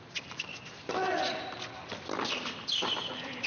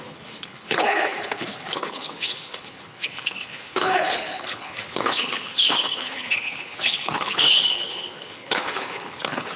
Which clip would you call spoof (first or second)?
second